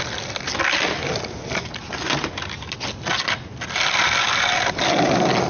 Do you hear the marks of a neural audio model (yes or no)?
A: no